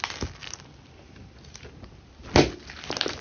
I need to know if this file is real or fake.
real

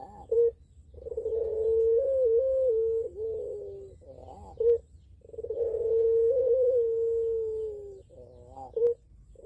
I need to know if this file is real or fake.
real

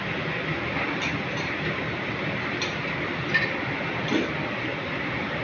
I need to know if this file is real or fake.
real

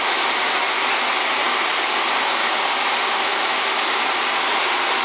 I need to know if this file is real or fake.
real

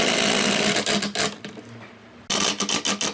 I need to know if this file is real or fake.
real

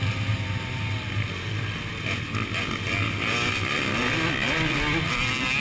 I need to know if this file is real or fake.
real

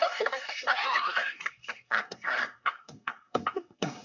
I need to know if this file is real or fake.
fake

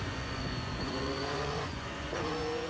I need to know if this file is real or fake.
fake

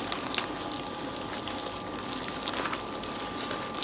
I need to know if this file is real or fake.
real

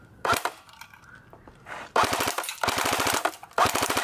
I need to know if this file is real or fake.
real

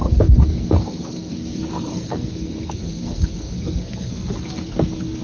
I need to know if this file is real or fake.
fake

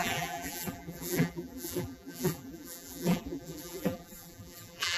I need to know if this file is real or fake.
fake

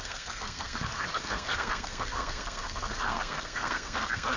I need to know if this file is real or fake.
fake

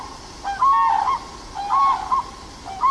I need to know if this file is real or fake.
real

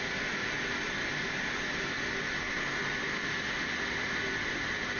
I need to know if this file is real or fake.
real